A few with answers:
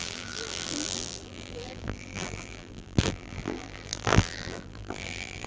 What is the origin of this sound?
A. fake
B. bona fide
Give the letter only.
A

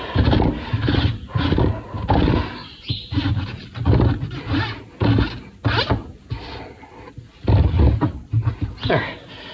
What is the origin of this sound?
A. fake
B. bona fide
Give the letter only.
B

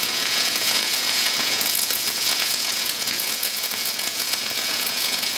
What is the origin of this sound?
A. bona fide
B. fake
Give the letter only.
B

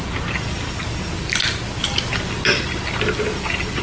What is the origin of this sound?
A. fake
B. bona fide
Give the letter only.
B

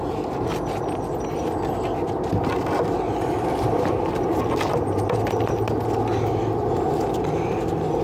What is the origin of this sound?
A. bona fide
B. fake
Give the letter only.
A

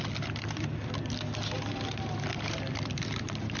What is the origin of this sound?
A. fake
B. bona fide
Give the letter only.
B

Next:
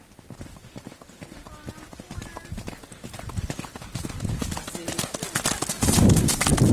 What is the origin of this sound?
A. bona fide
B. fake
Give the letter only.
A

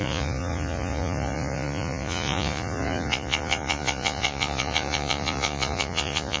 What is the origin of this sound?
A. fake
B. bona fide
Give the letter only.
A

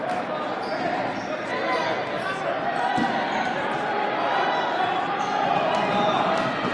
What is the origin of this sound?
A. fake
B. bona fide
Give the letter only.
B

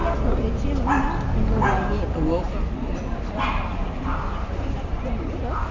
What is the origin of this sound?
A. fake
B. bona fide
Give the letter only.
B